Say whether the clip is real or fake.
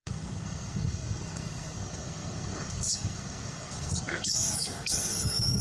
fake